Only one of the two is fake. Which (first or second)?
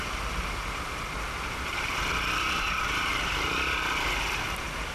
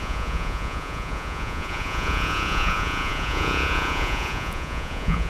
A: second